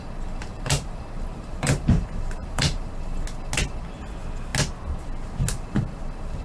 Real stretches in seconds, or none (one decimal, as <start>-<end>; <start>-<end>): 0.0-0.4; 1.9-2.4; 2.9-6.4